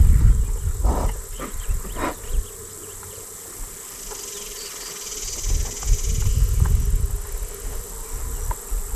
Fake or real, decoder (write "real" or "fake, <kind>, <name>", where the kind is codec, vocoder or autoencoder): real